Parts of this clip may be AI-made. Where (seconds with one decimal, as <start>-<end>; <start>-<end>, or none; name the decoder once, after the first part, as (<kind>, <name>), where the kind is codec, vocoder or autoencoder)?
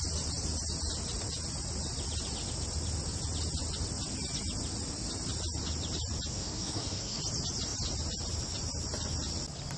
6.3-7.2 (codec, SNAC)